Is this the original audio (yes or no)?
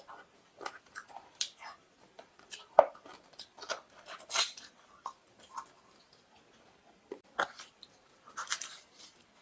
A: no